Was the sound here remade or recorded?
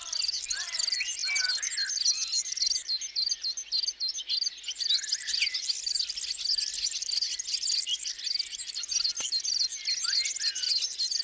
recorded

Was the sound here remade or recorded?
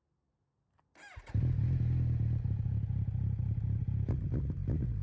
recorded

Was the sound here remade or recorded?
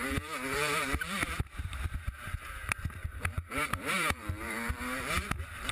remade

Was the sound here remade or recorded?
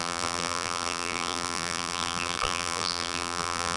remade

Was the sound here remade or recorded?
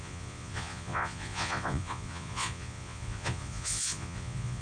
remade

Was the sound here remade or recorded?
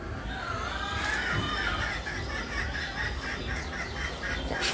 recorded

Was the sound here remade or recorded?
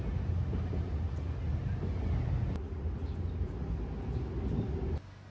recorded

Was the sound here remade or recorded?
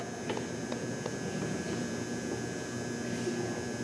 recorded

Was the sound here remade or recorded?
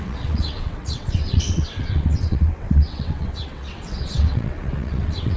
remade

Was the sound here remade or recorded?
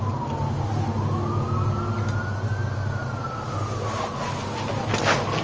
recorded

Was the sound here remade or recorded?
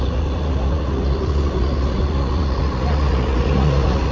remade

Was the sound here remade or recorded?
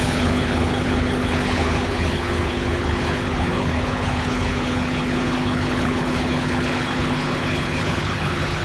remade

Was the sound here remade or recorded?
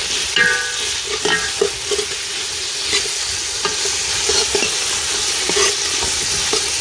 recorded